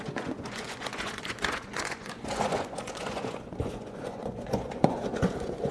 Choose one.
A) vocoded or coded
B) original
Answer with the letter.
A